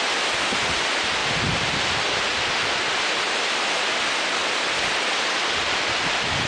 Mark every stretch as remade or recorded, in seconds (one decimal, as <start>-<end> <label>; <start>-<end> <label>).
0.0-6.5 recorded